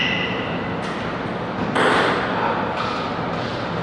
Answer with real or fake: real